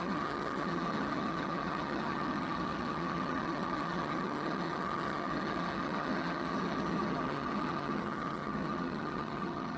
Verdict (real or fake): fake